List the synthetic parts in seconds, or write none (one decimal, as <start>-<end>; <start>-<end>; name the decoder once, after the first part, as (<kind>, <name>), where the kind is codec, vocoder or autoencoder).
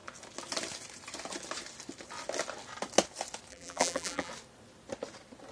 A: 3.5-4.3 (vocoder, BigVGAN v2)